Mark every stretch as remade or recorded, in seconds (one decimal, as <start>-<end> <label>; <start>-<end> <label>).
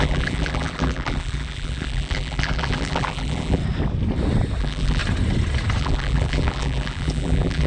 0.0-3.6 remade; 3.6-4.6 recorded; 4.6-5.0 remade; 5.0-5.8 recorded; 5.8-7.7 remade